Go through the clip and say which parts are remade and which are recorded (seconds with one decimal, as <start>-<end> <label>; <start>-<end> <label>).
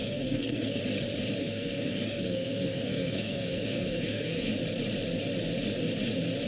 0.0-0.8 remade; 0.8-1.4 recorded; 1.4-4.5 remade; 4.5-6.5 recorded